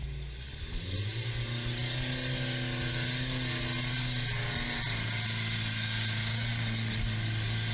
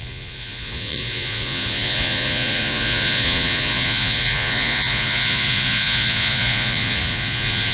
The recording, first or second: first